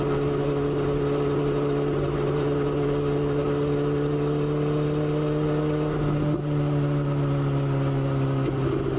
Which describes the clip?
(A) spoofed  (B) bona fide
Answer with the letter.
B